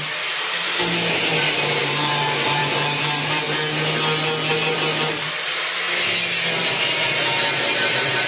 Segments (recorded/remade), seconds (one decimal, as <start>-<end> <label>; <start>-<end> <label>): 0.0-2.6 remade; 2.6-4.5 recorded; 4.5-5.7 remade; 5.7-6.6 recorded; 6.6-8.3 remade